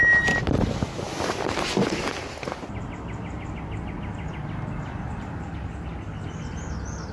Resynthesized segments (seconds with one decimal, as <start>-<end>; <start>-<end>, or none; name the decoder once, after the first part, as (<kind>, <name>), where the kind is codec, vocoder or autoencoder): none